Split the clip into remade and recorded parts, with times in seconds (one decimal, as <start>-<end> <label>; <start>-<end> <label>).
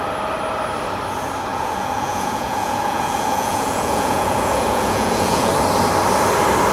0.0-1.5 recorded; 1.5-5.5 remade; 5.5-6.7 recorded